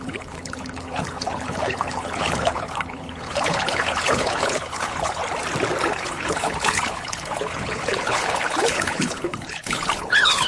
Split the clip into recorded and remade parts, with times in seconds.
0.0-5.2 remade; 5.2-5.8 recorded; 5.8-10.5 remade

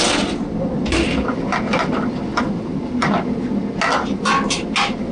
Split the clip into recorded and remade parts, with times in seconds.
0.0-5.1 recorded

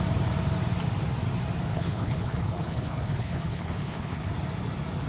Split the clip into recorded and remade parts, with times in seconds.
0.0-1.7 recorded; 1.7-4.3 remade; 4.3-5.1 recorded